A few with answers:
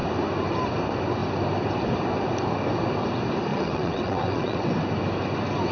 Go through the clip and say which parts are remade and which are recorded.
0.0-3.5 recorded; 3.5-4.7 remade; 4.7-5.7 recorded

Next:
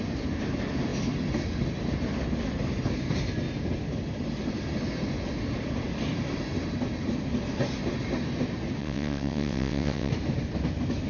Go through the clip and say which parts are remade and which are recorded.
0.0-8.8 recorded; 8.8-10.1 remade; 10.1-11.1 recorded

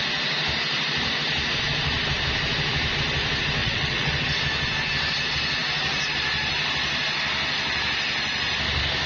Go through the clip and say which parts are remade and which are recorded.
0.0-3.6 recorded; 3.6-4.1 remade; 4.1-9.1 recorded